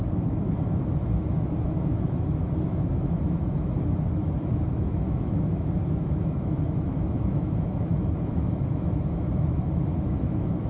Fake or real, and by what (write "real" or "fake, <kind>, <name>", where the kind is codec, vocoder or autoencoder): fake, autoencoder, DAC-VAE